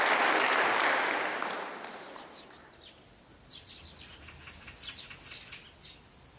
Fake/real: real